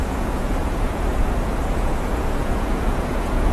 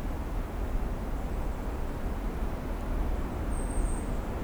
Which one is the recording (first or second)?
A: second